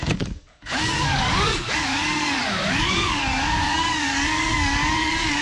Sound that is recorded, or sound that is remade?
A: remade